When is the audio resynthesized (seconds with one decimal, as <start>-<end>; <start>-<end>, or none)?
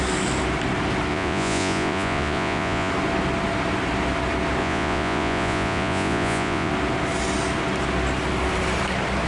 1.1-2.9; 4.6-6.7